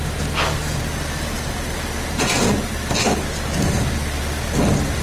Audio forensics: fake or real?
real